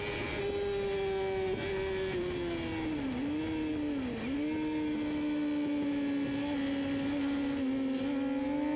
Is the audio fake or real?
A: real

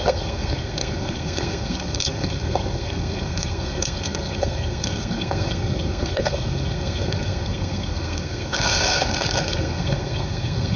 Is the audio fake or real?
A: fake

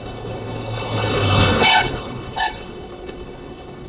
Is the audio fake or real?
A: fake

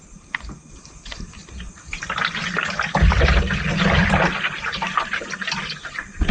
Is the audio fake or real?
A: real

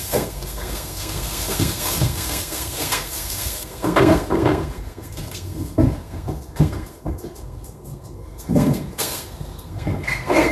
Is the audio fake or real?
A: fake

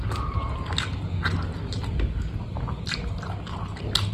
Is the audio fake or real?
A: real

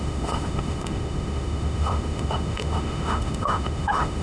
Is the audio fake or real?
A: fake